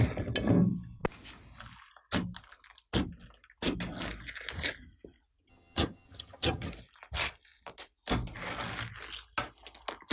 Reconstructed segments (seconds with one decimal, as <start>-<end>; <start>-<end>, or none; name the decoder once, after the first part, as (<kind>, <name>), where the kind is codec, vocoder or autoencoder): 5.5-6.7 (vocoder, HiFi-GAN)